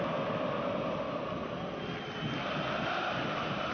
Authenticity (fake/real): real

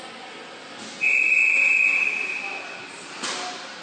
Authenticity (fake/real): real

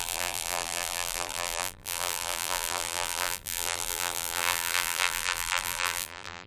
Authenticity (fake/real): fake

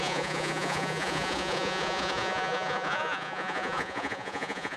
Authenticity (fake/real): fake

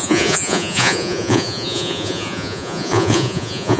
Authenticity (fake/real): fake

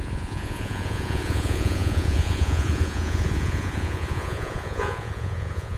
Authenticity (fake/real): fake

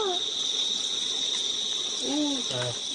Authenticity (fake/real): real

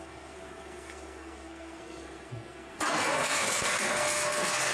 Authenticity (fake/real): fake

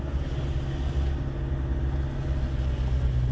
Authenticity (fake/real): real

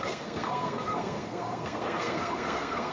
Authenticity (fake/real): fake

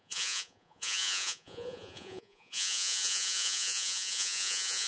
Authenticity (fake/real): fake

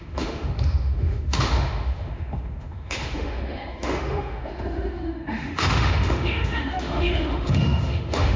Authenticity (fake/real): fake